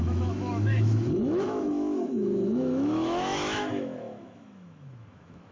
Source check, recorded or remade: remade